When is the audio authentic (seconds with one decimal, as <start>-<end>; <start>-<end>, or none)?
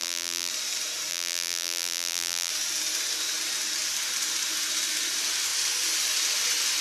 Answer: 0.5-1.1; 2.5-6.8